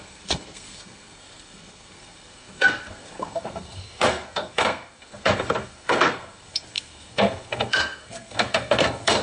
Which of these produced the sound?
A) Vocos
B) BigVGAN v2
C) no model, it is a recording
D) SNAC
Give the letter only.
D